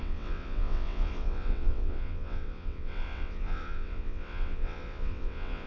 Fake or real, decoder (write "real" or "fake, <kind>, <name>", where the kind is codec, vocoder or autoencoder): fake, vocoder, WaveNeXt